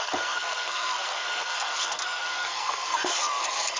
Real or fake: fake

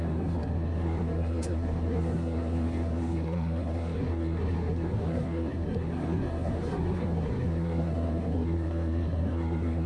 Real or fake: fake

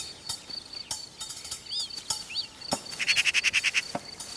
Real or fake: real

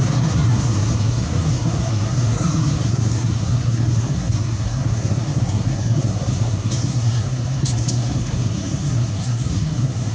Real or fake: fake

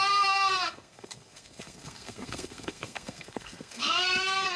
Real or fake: fake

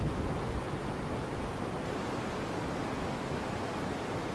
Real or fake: real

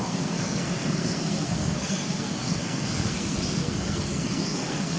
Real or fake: fake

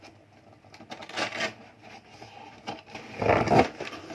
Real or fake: real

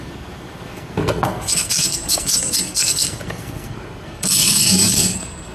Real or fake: fake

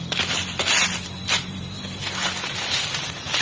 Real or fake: real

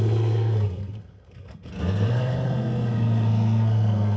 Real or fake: fake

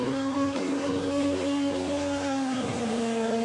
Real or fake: fake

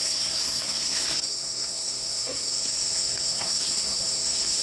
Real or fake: fake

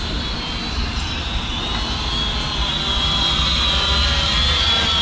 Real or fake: real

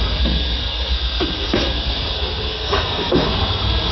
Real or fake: fake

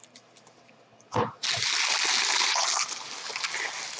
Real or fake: real